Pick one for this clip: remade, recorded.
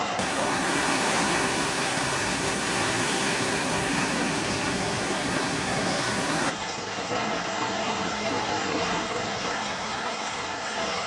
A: remade